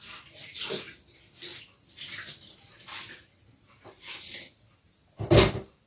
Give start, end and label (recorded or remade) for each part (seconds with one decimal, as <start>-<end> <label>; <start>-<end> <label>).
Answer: 0.0-5.9 recorded